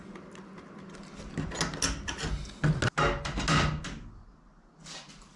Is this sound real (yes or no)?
yes